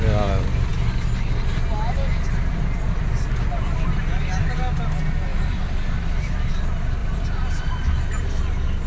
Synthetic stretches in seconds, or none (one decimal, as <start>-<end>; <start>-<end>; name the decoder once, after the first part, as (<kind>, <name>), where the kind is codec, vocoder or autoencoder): 5.3-6.5 (vocoder, BigVGAN v2); 7.0-8.3